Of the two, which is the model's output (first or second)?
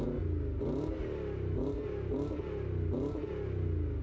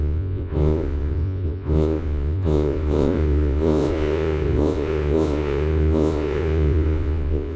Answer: second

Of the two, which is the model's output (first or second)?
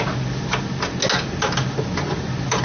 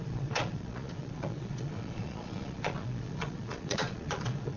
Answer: second